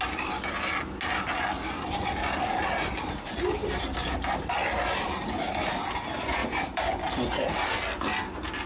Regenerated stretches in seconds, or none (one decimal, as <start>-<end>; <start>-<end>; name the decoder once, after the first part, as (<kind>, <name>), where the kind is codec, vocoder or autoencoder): 6.4-7.0 (vocoder, BigVGAN v2)